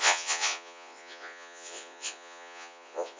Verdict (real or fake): fake